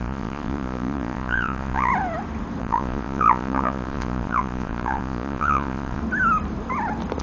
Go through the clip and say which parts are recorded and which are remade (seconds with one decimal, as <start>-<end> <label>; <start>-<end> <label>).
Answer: 0.0-1.9 remade; 1.9-2.6 recorded; 2.6-6.0 remade; 6.0-7.2 recorded